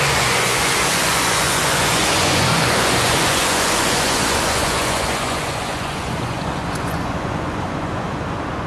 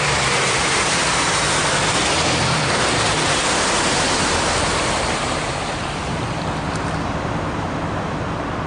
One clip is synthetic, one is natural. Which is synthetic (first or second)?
first